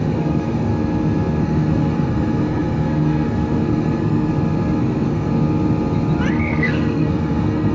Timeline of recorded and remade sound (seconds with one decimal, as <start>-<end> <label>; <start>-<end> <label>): 0.0-0.7 remade; 0.7-1.4 recorded; 1.4-4.3 remade; 4.3-4.8 recorded; 4.8-5.3 remade; 5.3-6.3 recorded; 6.3-7.7 remade